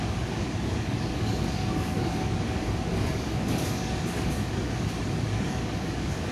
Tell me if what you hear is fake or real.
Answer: fake